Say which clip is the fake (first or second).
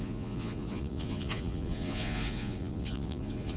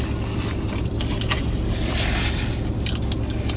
first